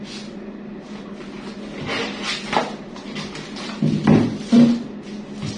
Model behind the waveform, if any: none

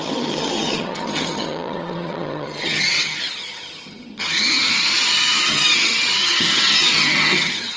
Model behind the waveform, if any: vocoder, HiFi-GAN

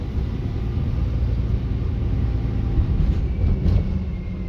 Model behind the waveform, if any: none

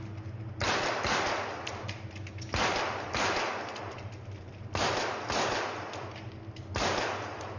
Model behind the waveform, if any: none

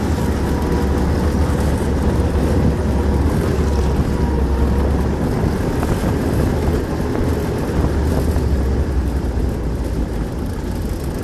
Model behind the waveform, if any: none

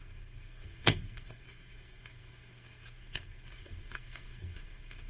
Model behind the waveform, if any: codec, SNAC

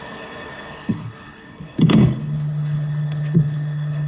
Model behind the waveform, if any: codec, HILCodec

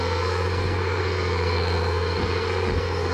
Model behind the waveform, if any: codec, SNAC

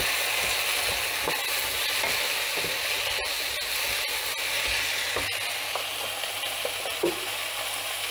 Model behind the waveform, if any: none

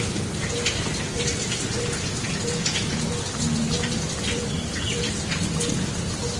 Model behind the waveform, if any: none